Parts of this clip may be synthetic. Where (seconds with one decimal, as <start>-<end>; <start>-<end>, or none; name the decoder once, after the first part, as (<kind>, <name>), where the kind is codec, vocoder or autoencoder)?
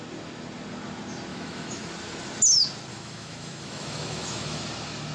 1.3-1.9 (autoencoder, DAC-VAE); 2.9-4.6